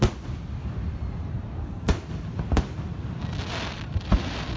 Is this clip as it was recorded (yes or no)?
yes